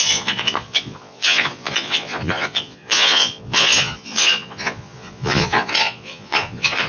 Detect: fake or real fake